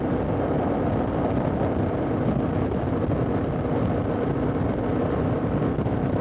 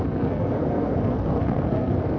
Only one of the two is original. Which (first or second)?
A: first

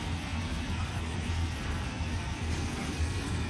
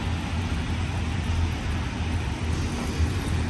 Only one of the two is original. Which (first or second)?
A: second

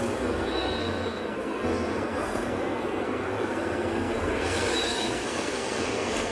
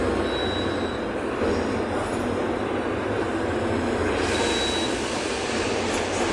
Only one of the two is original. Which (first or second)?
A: second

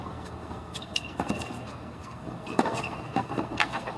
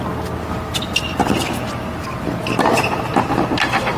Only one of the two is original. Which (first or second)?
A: second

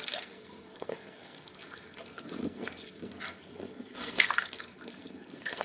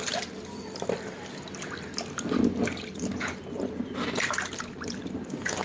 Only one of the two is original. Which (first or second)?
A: second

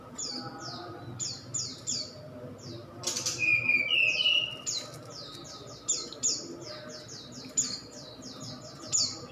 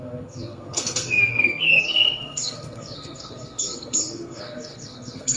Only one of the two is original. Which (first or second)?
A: first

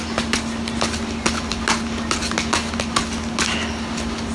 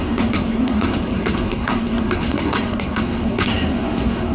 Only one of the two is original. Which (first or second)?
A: first